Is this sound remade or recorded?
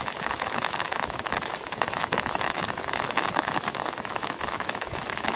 remade